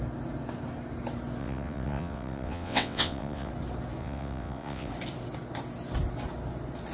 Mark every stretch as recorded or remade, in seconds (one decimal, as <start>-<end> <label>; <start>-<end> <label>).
0.0-1.4 recorded; 1.4-3.5 remade; 3.5-4.0 recorded; 4.0-4.9 remade; 4.9-6.9 recorded